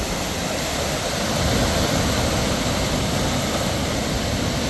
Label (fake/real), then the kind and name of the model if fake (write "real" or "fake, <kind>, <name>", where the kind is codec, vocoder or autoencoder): real